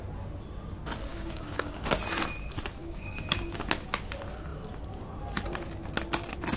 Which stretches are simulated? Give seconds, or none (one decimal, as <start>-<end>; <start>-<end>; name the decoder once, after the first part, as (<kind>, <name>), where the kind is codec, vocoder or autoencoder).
1.1-1.8 (codec, DAC); 2.8-3.6